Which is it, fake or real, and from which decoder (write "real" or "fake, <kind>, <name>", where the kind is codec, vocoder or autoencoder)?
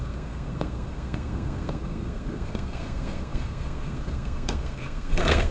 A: fake, codec, SNAC